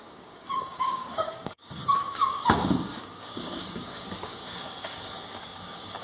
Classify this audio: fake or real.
fake